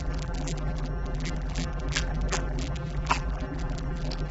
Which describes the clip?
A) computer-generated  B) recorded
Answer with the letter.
A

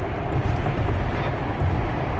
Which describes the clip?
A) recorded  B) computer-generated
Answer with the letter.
A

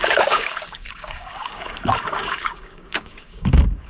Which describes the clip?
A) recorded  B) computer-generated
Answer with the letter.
B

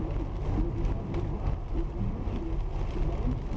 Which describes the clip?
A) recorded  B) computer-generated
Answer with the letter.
A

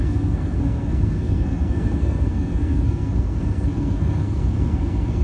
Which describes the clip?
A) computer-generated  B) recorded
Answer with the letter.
A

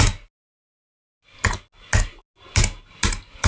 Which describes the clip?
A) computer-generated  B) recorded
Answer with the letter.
B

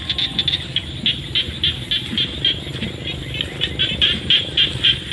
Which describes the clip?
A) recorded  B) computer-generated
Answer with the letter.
A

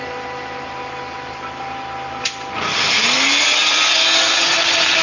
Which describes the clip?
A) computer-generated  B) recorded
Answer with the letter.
B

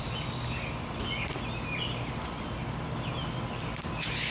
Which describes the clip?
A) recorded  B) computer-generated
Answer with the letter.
A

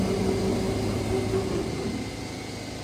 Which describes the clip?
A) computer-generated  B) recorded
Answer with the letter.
B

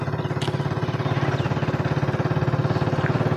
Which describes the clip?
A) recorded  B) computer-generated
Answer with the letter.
A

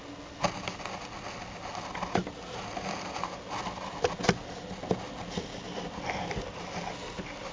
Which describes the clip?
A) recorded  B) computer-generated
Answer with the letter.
A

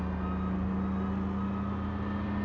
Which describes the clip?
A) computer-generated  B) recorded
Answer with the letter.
B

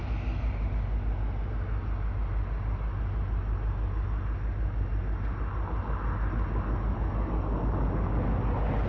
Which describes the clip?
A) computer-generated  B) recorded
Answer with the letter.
B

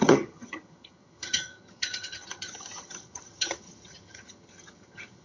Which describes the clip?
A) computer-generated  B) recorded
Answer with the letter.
A